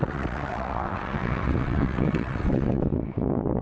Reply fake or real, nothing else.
fake